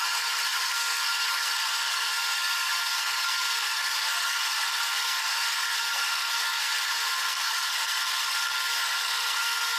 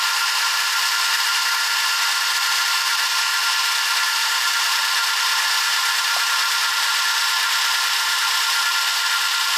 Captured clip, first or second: second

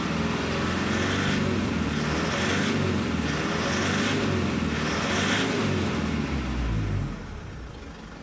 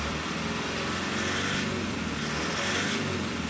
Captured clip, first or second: first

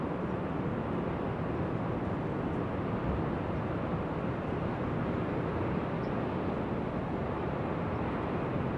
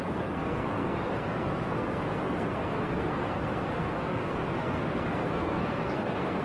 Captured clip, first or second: first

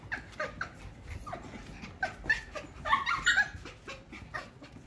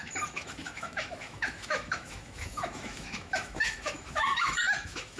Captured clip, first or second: first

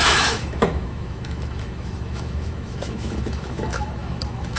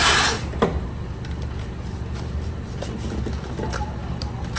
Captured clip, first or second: second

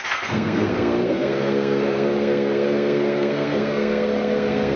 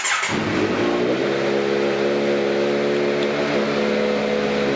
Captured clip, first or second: second